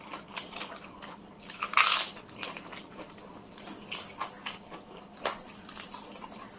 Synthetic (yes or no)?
no